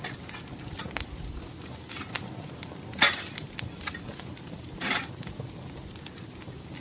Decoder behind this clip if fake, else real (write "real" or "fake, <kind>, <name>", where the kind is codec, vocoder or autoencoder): real